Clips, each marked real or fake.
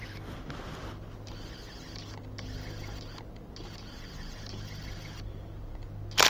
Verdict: real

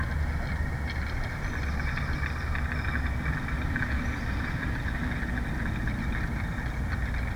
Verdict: real